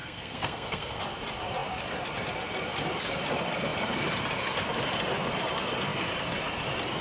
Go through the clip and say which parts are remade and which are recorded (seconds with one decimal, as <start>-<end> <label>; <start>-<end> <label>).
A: 0.0-1.0 remade; 1.0-7.0 recorded